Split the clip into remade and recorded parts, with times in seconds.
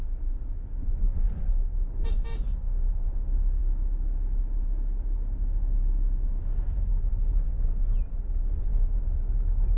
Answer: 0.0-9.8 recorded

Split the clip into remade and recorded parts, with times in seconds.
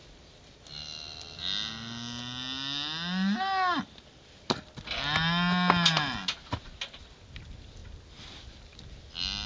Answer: 0.0-9.5 recorded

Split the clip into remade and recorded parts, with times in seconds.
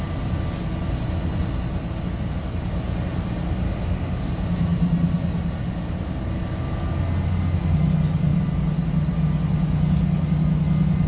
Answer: 0.0-3.7 recorded; 3.7-4.3 remade; 4.3-11.1 recorded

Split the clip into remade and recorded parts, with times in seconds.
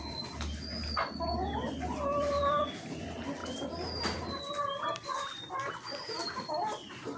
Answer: 0.0-3.4 recorded; 3.4-4.4 remade; 4.4-7.2 recorded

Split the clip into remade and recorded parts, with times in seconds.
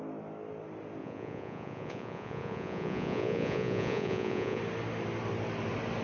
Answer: 0.0-1.0 recorded; 1.0-4.6 remade; 4.6-6.0 recorded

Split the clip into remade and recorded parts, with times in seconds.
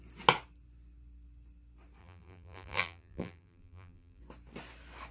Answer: 0.0-2.0 recorded; 2.0-4.2 remade; 4.2-5.1 recorded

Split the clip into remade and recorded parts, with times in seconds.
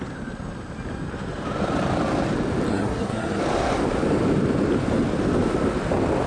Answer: 0.0-2.7 recorded; 2.7-3.4 remade; 3.4-6.3 recorded